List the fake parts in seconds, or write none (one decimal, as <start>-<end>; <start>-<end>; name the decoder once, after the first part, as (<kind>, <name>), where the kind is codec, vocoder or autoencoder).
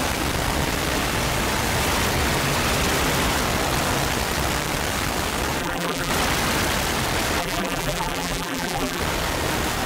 5.6-6.1 (vocoder, BigVGAN v2); 7.4-9.0